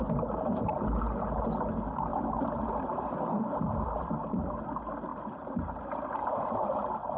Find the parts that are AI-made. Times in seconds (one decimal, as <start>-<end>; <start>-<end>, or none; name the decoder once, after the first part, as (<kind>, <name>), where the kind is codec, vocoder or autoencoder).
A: 2.1-4.1 (vocoder, BigVGAN v2)

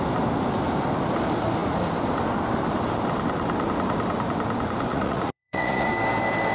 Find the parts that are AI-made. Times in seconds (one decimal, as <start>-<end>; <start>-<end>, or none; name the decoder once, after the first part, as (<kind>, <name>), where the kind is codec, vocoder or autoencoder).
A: 4.9-5.9 (vocoder, Vocos)

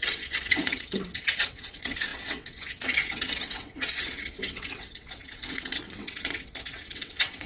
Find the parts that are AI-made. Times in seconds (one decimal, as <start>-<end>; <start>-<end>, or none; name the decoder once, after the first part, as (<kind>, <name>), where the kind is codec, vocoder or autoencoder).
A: 0.0-7.5 (vocoder, WaveNeXt)

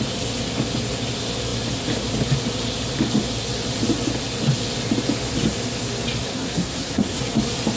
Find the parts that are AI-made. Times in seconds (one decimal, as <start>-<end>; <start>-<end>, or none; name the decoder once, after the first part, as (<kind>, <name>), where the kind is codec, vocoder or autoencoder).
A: 6.3-7.2 (codec, SNAC)

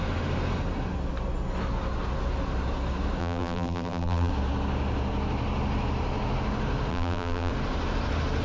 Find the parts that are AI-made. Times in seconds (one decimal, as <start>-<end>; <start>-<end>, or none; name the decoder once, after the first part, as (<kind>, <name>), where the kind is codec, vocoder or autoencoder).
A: 3.2-4.3 (vocoder, BigVGAN v2); 6.9-7.5

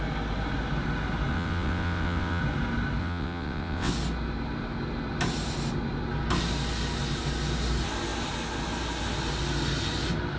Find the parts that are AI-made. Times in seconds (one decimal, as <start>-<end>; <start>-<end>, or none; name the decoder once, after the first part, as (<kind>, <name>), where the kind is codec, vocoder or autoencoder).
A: 1.3-2.4 (vocoder, WaveNeXt); 3.0-3.9